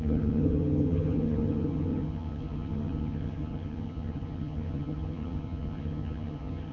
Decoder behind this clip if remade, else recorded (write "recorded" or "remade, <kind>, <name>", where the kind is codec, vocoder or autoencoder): remade, vocoder, HiFi-GAN